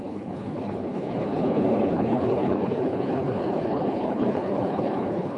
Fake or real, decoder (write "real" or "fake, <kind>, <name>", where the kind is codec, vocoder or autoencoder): fake, codec, HILCodec